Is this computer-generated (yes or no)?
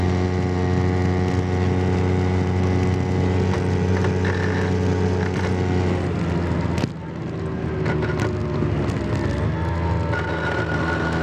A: no